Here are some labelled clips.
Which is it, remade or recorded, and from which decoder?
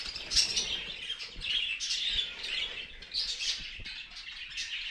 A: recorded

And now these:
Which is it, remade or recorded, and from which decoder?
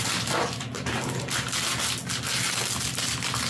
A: recorded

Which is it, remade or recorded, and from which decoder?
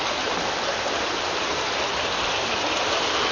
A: recorded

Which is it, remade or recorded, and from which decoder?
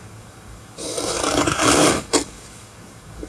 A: remade, codec, DAC